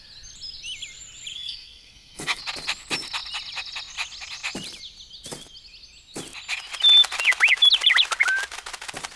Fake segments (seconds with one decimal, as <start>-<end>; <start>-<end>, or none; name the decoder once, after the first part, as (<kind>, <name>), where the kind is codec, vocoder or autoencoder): 1.3-2.4 (codec, SNAC)